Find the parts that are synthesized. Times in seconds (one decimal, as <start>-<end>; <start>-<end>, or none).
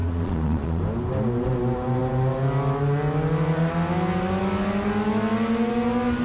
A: 0.0-0.8